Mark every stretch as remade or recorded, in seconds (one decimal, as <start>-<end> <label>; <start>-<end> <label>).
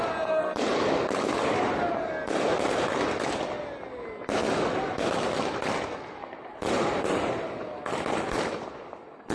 0.0-9.3 recorded